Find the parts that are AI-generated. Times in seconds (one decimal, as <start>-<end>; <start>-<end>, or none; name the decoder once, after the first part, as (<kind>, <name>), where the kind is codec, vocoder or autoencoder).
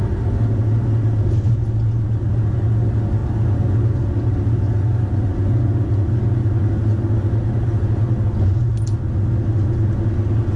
none